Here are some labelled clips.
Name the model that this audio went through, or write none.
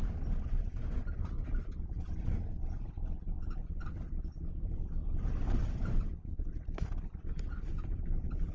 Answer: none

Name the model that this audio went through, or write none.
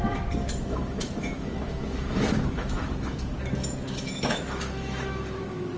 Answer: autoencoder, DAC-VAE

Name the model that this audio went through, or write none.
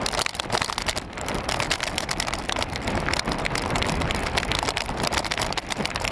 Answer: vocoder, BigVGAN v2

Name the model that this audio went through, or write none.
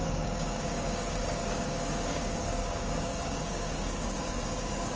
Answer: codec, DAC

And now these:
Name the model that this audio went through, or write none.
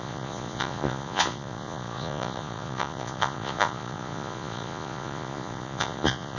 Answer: vocoder, Vocos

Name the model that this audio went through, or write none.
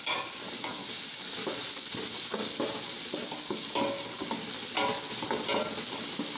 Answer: none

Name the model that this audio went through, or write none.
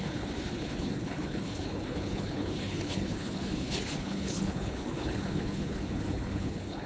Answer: codec, HILCodec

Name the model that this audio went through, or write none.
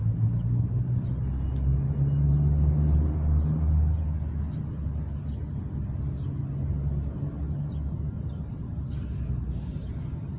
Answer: none